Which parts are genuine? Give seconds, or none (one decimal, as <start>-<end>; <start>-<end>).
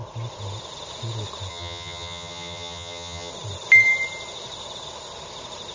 0.0-1.5; 3.3-5.7